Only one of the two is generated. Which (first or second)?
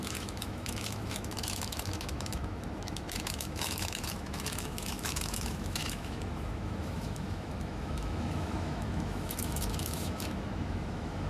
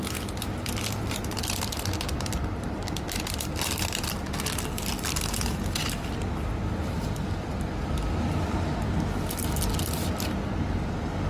first